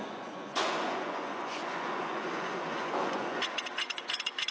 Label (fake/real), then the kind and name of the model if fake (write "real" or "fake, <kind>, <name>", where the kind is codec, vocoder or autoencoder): fake, vocoder, Vocos